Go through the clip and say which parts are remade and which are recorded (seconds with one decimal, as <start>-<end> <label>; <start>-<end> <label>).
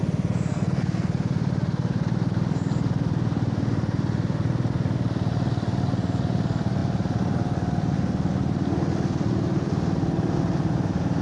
0.0-0.5 recorded; 0.5-1.1 remade; 1.1-11.2 recorded